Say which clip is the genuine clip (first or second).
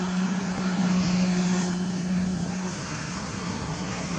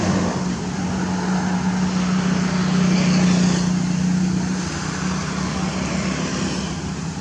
second